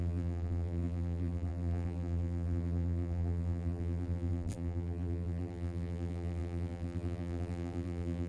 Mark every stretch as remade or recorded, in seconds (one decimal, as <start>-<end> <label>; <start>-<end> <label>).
0.0-8.3 remade